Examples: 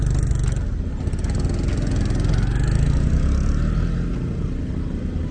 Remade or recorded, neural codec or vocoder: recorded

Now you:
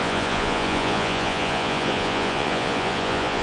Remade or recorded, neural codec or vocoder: remade, vocoder, Vocos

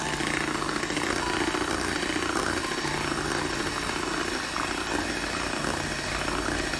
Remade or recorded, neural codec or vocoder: recorded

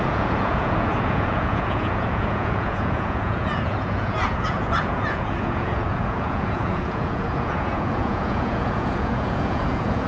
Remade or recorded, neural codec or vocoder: remade, vocoder, Vocos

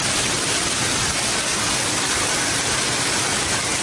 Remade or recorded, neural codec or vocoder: recorded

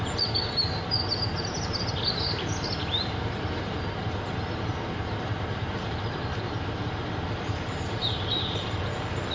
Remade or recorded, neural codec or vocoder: remade, vocoder, BigVGAN v2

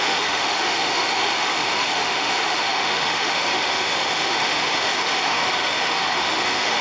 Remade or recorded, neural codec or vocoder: remade, autoencoder, DAC-VAE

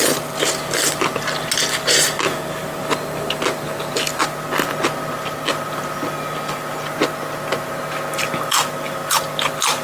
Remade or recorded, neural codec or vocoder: recorded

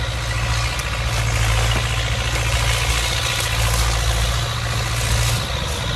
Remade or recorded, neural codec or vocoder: recorded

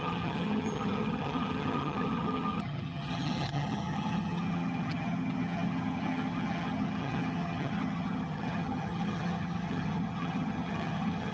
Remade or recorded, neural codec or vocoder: remade, vocoder, HiFi-GAN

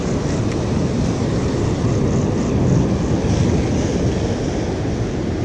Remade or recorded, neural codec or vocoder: recorded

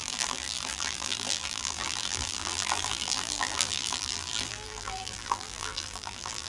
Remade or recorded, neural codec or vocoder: remade, vocoder, BigVGAN v2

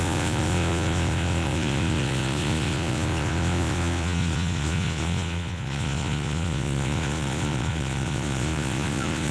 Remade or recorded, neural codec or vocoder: remade, vocoder, Vocos